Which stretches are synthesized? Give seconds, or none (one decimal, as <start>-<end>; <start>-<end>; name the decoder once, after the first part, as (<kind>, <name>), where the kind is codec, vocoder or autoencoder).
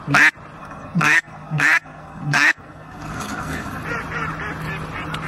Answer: 0.6-3.8 (codec, SNAC)